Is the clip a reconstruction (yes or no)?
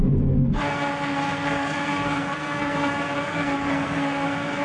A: yes